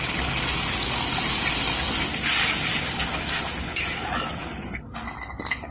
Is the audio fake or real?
real